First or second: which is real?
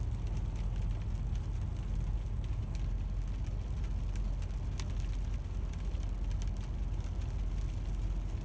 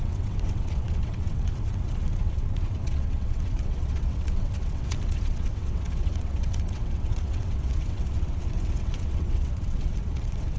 first